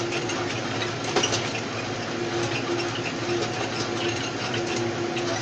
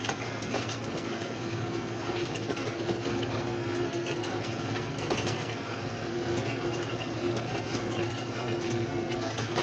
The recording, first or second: first